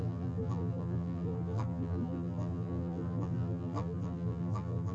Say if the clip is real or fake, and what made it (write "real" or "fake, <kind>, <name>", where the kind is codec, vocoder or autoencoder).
fake, vocoder, BigVGAN v2